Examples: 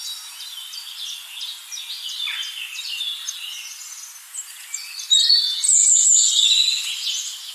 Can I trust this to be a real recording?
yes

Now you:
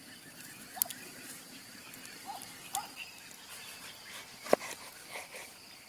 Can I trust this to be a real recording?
yes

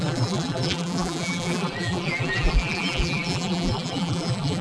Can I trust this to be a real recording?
no